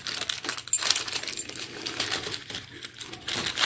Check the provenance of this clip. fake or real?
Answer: real